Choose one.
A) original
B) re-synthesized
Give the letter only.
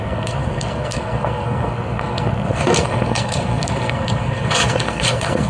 B